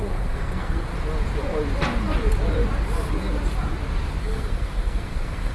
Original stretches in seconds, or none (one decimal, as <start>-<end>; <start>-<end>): 0.9-4.2